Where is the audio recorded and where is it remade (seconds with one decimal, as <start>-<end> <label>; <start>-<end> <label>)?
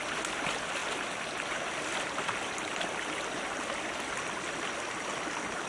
0.0-5.7 recorded